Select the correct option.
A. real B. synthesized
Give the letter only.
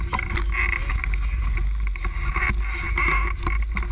A